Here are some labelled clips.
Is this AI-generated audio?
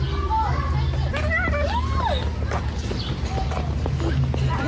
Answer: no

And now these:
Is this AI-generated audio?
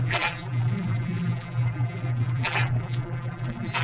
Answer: yes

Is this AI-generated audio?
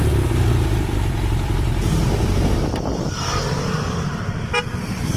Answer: yes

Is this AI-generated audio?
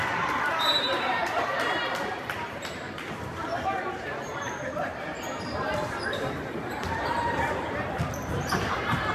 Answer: yes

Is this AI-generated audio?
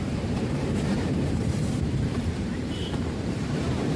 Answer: yes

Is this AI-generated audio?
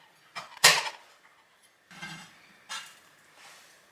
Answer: no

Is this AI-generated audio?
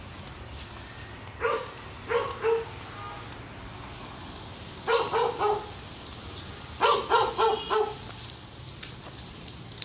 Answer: no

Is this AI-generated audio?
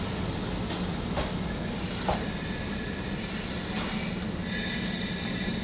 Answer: no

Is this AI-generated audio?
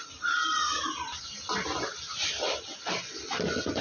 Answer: no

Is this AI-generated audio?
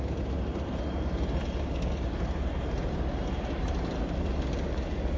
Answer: no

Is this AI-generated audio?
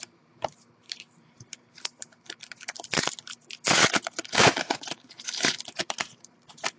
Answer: yes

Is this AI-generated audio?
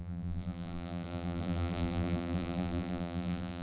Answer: yes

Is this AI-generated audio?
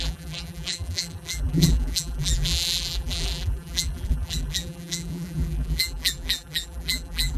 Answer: yes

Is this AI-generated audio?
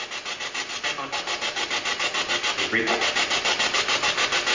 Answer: no